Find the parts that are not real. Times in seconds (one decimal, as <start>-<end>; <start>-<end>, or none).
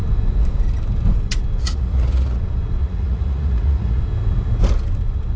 1.6-2.4; 2.8-4.0